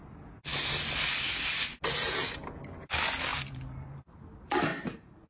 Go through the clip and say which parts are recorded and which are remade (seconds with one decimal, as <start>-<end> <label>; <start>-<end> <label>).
0.0-3.3 recorded; 3.3-4.2 remade; 4.2-4.7 recorded; 4.7-5.3 remade

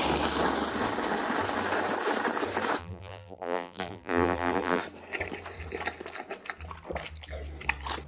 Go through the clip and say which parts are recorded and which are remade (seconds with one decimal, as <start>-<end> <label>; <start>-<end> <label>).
0.0-2.8 recorded; 2.8-4.8 remade; 4.8-8.1 recorded

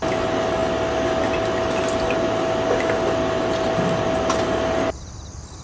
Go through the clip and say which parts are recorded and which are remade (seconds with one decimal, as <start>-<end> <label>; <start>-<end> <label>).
0.0-5.6 recorded

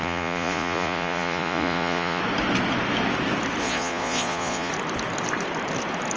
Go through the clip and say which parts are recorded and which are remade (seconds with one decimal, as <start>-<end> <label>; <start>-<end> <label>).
0.0-2.2 remade; 2.2-3.6 recorded; 3.6-4.7 remade; 4.7-6.2 recorded

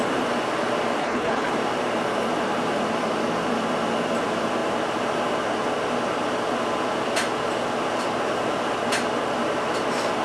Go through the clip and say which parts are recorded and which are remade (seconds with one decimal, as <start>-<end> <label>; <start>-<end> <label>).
0.0-1.0 recorded; 1.0-1.5 remade; 1.5-10.2 recorded

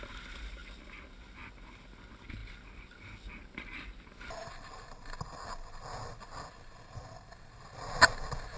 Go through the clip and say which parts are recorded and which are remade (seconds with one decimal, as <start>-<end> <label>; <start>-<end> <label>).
0.0-8.6 recorded